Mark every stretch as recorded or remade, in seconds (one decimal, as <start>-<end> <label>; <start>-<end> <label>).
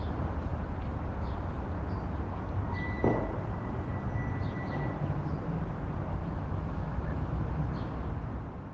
0.0-6.2 recorded; 6.2-7.7 remade; 7.7-8.7 recorded